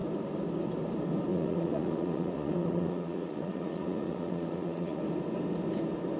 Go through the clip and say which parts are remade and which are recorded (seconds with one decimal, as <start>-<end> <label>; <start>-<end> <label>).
0.0-1.3 recorded; 1.3-5.0 remade; 5.0-6.2 recorded